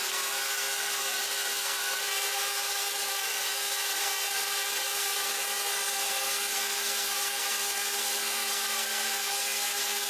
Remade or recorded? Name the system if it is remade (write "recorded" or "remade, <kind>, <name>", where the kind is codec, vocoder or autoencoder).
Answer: remade, codec, SNAC